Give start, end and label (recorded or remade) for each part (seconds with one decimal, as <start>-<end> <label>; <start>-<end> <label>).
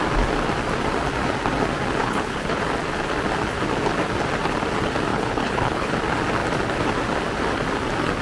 0.0-2.0 recorded; 2.0-2.6 remade; 2.6-5.1 recorded; 5.1-5.9 remade; 5.9-8.2 recorded